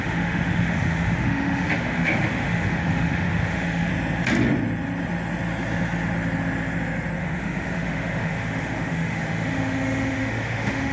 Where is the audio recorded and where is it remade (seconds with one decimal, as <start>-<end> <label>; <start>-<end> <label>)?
0.0-3.9 remade; 3.9-7.2 recorded; 7.2-10.9 remade

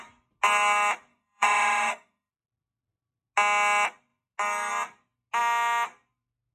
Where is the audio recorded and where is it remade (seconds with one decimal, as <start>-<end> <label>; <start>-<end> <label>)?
0.0-1.1 recorded; 1.1-2.3 remade; 2.3-6.5 recorded

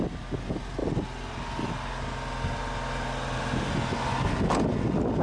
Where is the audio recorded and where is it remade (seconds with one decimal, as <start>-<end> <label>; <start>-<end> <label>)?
0.0-5.2 recorded

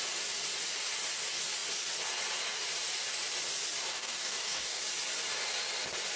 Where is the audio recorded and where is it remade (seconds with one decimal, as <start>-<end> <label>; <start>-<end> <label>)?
0.0-3.9 recorded; 3.9-4.8 remade; 4.8-6.2 recorded